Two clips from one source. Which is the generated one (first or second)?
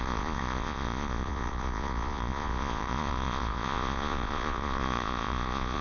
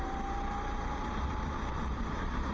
first